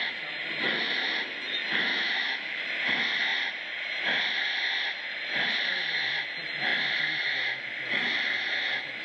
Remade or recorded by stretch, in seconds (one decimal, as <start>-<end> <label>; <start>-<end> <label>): 0.0-1.9 recorded; 1.9-2.6 remade; 2.6-9.0 recorded